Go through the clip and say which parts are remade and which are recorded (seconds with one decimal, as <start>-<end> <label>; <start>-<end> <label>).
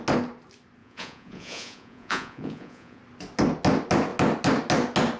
0.0-0.8 recorded; 0.8-3.0 remade; 3.0-5.2 recorded